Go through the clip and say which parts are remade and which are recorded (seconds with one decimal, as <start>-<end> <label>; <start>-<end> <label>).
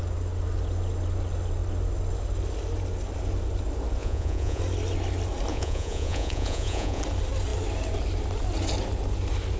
0.0-4.0 recorded; 4.0-4.6 remade; 4.6-5.5 recorded; 5.5-7.0 remade; 7.0-9.6 recorded